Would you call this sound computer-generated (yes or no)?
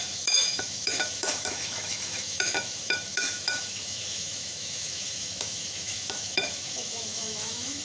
yes